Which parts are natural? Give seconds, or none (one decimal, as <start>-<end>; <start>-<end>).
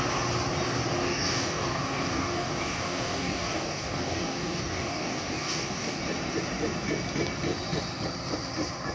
0.0-1.0; 6.0-8.9